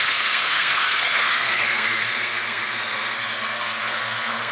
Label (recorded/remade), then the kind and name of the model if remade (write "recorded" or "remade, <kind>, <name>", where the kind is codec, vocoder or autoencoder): remade, codec, SNAC